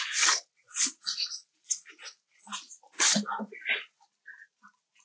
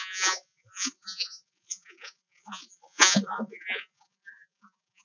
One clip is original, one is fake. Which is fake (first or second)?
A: second